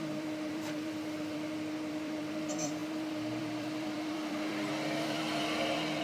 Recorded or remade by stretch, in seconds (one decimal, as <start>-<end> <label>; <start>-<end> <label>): 0.0-6.0 remade